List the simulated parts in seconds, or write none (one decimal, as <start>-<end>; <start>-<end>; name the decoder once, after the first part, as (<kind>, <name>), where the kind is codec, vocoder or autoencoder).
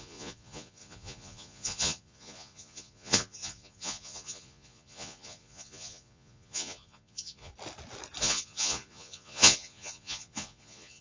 0.0-7.5 (vocoder, Vocos); 8.2-11.0